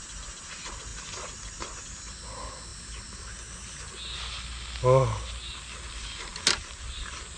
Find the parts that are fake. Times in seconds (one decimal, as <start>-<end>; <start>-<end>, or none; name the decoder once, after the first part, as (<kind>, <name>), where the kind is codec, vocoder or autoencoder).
none